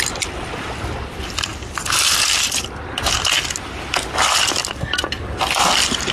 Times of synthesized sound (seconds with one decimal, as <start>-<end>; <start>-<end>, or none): none